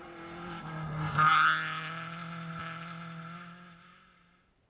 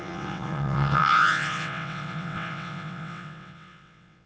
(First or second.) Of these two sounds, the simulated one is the second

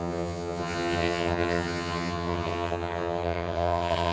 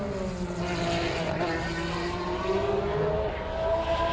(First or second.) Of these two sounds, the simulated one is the first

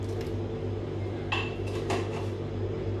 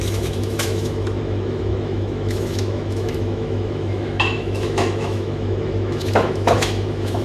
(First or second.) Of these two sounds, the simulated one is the second